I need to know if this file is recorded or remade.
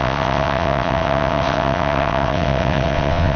remade